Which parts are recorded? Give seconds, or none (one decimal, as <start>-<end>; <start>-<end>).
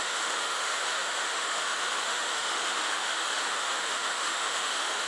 none